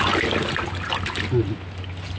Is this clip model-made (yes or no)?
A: no